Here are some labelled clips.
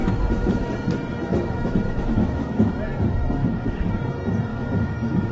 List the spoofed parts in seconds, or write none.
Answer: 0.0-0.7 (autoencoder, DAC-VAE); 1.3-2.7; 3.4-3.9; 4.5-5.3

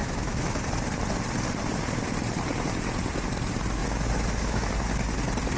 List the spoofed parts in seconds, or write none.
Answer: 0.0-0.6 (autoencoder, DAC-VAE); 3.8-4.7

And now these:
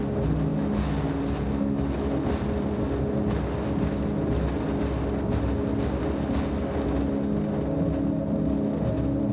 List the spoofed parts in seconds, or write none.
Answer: none

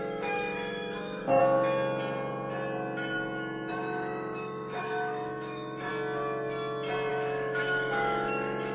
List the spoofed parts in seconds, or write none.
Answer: 0.0-1.4 (autoencoder, DAC-VAE); 3.7-5.9; 7.1-8.7

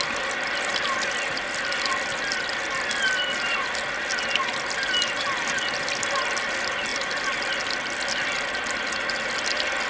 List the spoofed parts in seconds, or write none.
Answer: none

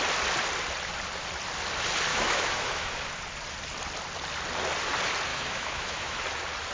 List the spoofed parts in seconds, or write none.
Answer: 2.1-3.1 (autoencoder, DAC-VAE); 5.3-6.2

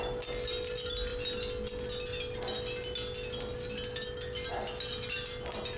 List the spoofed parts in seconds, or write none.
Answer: none